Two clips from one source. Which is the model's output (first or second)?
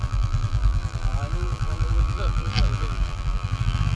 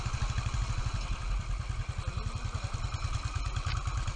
first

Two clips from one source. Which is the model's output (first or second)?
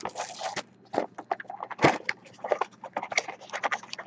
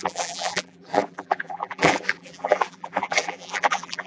second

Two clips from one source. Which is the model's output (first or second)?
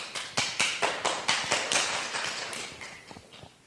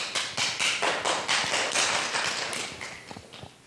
first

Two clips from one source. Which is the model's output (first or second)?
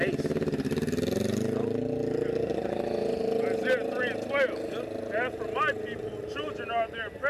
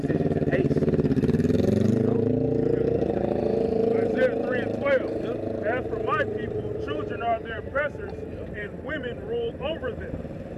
second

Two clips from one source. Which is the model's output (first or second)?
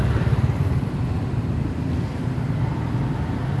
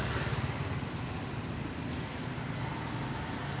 first